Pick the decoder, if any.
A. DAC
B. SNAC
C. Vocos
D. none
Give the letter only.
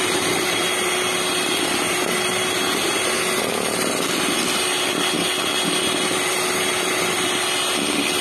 D